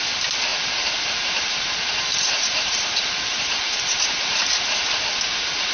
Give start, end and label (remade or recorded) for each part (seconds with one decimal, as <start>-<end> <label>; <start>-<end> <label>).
0.0-2.1 recorded; 2.1-4.4 remade; 4.4-5.7 recorded